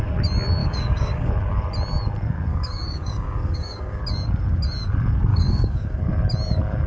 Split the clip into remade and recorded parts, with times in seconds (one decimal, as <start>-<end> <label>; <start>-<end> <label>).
0.0-0.6 recorded; 0.6-1.3 remade; 1.3-2.5 recorded; 2.5-4.0 remade; 4.0-5.3 recorded; 5.3-6.0 remade; 6.0-6.9 recorded